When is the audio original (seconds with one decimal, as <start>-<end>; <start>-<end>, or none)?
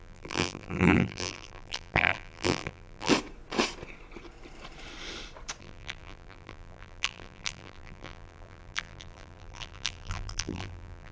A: 3.1-5.6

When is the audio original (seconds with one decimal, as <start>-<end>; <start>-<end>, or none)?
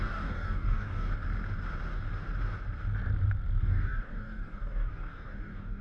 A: 1.1-3.6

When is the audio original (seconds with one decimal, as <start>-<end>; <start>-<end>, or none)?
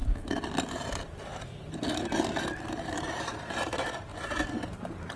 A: 0.0-0.7; 1.3-2.7; 4.1-4.7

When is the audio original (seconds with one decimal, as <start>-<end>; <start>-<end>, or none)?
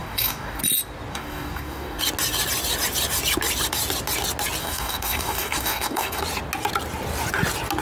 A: 0.6-1.1; 2.0-4.6; 6.2-7.8